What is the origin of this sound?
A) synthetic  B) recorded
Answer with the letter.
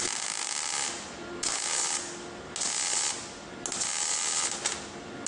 B